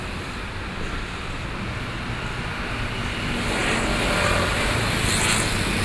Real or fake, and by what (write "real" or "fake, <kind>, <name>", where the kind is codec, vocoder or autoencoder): real